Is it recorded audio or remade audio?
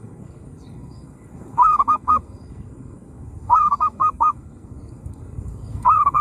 remade